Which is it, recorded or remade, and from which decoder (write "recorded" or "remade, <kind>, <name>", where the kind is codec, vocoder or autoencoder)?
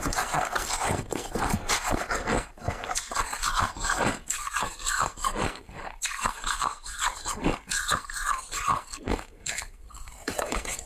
remade, codec, SNAC